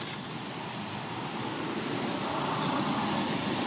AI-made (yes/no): no